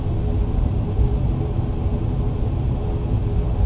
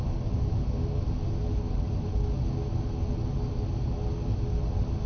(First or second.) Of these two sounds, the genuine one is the second